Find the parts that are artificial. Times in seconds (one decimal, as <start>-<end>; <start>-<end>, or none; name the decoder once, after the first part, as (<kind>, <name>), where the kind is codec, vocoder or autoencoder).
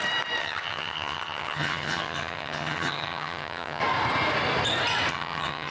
0.4-3.8 (vocoder, HiFi-GAN); 5.1-5.7